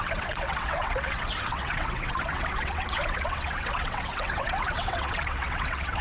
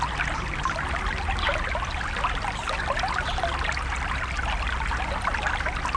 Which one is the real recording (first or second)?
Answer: second